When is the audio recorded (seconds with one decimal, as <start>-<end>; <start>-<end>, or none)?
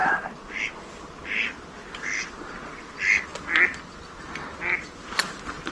0.0-5.7